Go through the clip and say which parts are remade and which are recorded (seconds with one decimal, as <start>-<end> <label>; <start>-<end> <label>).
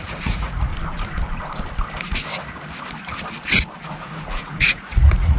0.0-0.7 remade; 0.7-3.9 recorded; 3.9-5.4 remade